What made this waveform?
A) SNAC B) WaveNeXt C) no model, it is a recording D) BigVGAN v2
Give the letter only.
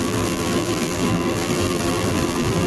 D